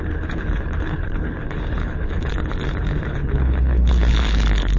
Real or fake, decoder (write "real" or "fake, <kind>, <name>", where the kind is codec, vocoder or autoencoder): fake, codec, HILCodec